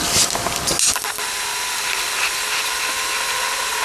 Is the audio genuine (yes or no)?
yes